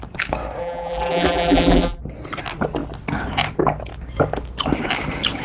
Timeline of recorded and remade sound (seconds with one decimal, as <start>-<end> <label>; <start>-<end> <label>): 0.0-0.6 recorded; 0.6-2.0 remade; 2.0-5.4 recorded